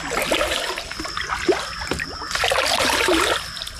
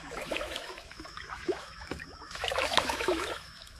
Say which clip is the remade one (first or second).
second